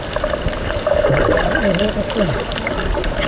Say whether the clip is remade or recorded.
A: recorded